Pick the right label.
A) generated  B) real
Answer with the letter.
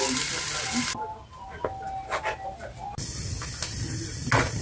B